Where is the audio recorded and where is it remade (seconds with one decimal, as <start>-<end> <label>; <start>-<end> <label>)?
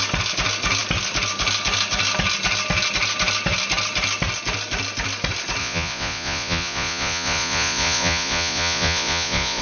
0.0-5.6 recorded; 5.6-9.6 remade